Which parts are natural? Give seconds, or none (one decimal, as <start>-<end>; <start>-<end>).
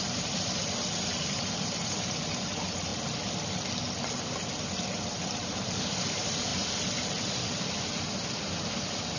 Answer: 2.9-5.0